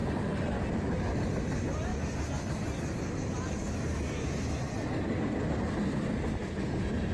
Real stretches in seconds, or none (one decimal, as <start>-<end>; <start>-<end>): 0.0-7.1

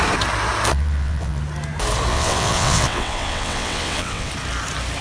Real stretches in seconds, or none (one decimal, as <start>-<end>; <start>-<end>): 0.0-0.7; 1.4-2.1; 4.3-5.0

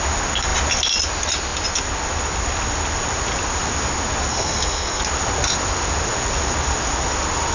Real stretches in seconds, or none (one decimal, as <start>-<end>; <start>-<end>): 0.0-4.3; 5.0-7.5

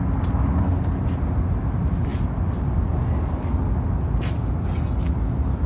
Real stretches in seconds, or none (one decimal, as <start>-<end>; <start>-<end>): 0.0-5.7

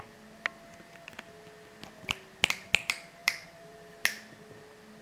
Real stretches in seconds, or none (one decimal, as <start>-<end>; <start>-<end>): 0.0-3.2; 3.9-5.0

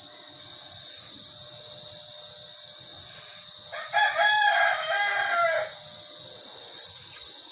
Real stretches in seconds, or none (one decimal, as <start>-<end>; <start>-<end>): 0.0-7.5